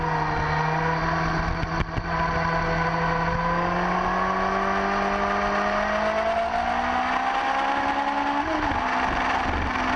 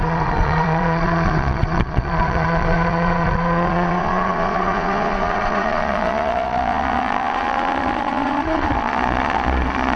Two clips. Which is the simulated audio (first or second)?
second